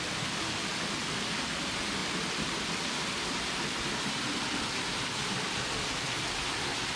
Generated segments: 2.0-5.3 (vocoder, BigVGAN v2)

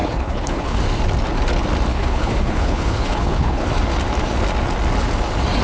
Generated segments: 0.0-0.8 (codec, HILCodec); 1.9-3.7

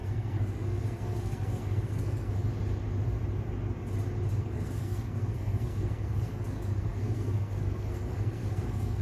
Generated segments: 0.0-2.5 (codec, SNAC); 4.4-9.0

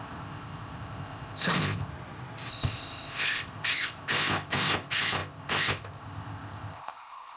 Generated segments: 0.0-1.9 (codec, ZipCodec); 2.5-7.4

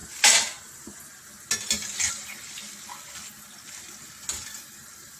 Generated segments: none

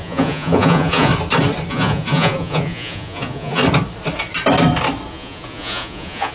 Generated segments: 0.0-1.1 (vocoder, Vocos); 1.7-3.6; 5.1-6.3